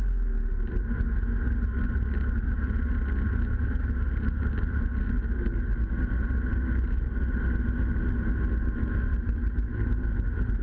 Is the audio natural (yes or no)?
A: yes